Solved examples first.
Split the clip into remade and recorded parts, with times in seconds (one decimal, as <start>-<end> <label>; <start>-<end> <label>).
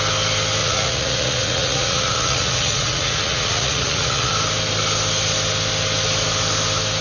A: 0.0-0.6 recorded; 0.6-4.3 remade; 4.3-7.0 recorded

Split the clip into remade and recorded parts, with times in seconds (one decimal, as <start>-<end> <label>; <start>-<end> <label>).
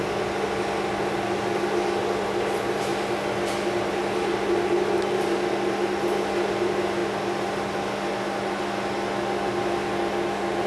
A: 0.0-10.7 recorded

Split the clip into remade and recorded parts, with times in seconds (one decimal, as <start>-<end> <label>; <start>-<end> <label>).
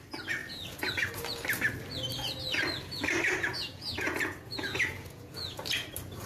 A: 0.0-3.5 recorded; 3.5-5.6 remade; 5.6-6.3 recorded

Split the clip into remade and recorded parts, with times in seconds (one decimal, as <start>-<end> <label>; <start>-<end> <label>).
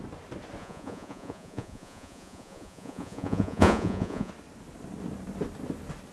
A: 0.0-0.6 recorded; 0.6-4.3 remade; 4.3-6.1 recorded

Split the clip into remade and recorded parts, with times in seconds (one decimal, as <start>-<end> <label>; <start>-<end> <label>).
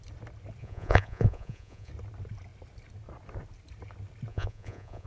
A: 0.0-0.6 recorded; 0.6-1.9 remade; 1.9-4.3 recorded; 4.3-5.1 remade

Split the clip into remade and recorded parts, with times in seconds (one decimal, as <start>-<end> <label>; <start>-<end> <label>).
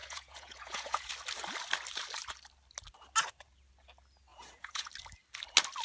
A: 0.0-1.1 remade; 1.1-4.3 recorded; 4.3-4.9 remade; 4.9-5.8 recorded